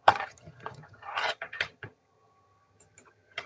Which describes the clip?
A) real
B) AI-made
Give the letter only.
B